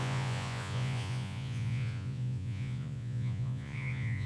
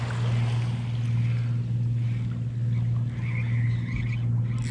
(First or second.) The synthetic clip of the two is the first